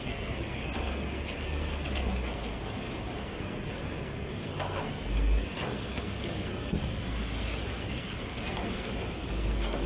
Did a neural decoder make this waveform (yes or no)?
yes